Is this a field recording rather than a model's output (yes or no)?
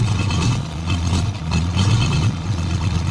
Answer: no